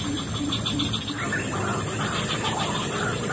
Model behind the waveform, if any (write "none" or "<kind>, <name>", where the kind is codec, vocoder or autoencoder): none